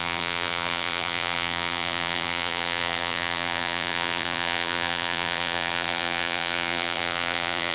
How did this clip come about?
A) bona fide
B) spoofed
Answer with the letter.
B